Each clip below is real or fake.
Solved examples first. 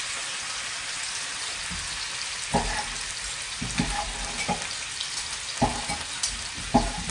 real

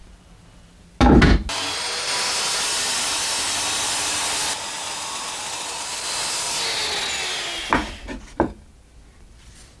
real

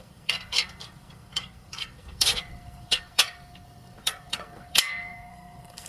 fake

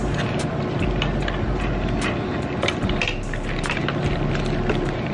real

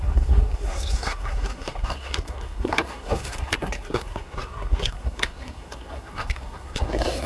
fake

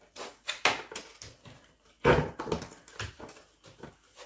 real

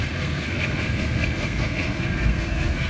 fake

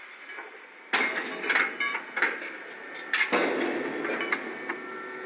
real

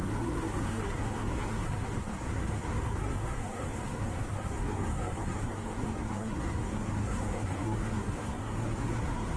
fake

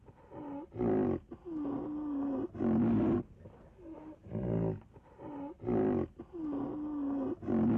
real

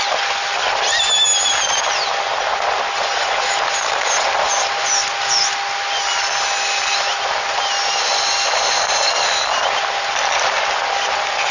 real